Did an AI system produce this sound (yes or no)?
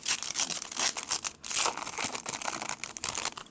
no